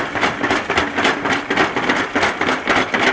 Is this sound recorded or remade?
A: recorded